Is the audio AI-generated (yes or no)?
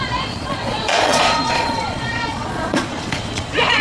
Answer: yes